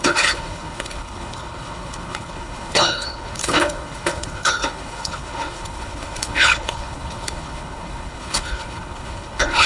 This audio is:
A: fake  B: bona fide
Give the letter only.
A